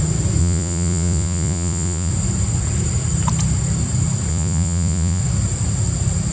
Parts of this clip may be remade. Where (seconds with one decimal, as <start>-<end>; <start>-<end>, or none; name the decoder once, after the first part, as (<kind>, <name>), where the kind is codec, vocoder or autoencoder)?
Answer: 0.4-2.1 (vocoder, Vocos); 4.3-5.2